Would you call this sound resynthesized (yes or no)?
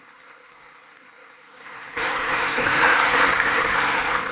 yes